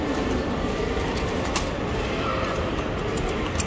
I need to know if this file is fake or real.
real